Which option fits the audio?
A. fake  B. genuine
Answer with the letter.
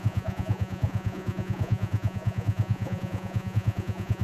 A